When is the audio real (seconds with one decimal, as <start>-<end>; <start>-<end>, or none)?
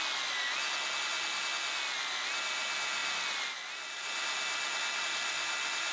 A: 0.0-5.9